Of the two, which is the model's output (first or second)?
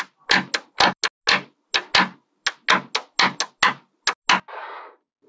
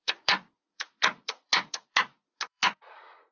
second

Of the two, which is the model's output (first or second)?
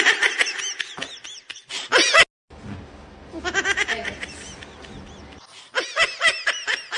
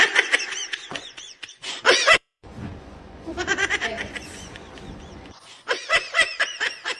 second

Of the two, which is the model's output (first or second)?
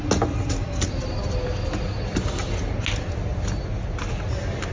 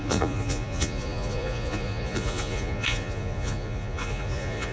second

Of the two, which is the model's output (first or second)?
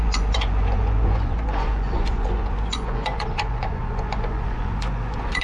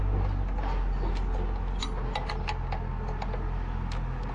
first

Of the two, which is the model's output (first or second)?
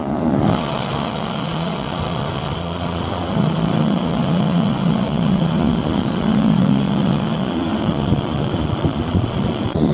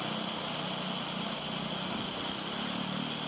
first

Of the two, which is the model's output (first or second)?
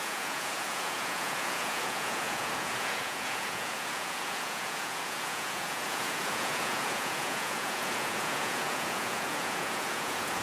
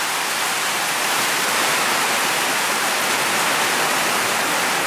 first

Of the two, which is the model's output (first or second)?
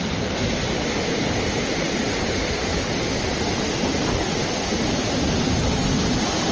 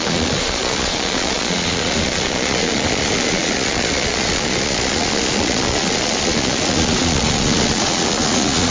second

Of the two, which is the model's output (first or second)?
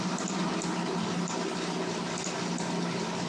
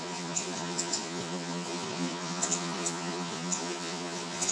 second